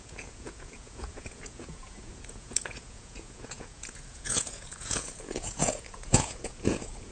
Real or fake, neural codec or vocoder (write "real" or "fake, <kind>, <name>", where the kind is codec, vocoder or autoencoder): fake, vocoder, Vocos